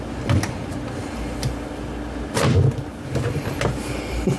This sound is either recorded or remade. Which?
recorded